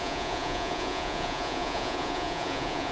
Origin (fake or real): fake